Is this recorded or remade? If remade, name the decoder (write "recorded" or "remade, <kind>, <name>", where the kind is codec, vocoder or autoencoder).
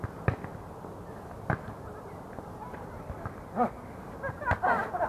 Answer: recorded